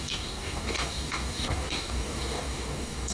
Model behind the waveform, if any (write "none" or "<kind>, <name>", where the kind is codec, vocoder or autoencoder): codec, DAC